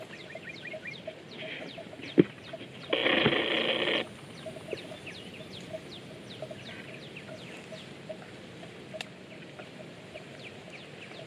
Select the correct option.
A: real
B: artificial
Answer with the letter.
A